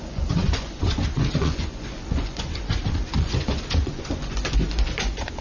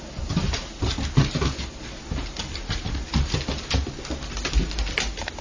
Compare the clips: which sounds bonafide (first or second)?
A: second